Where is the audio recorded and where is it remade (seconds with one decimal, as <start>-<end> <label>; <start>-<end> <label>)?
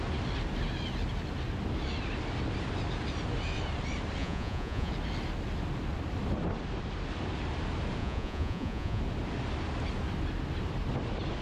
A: 0.0-4.2 recorded; 4.2-4.9 remade; 4.9-8.0 recorded; 8.0-9.0 remade; 9.0-11.4 recorded